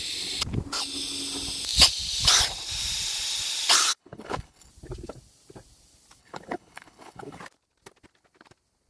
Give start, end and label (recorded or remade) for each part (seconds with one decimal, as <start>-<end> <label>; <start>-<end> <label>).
0.0-4.0 recorded; 4.0-4.7 remade; 4.7-6.2 recorded; 6.2-7.4 remade; 7.4-8.9 recorded